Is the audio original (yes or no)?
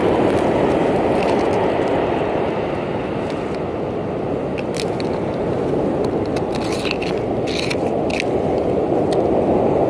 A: yes